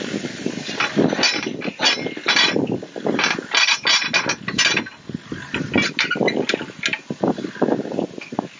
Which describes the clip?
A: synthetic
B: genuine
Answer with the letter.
B